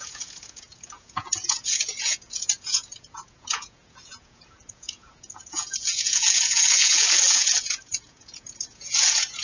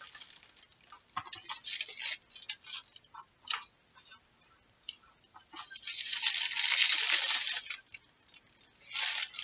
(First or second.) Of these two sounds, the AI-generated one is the first